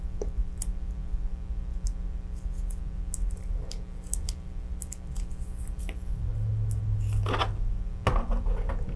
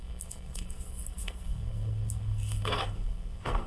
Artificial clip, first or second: second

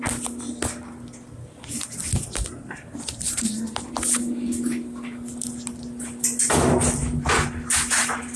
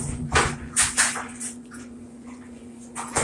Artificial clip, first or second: second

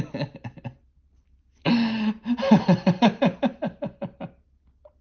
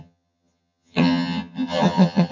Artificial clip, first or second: second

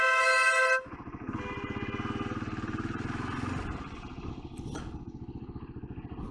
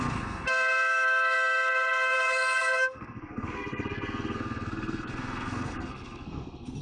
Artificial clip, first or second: second